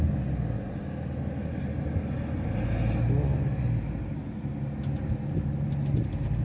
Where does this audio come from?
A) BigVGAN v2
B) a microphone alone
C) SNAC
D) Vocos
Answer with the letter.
B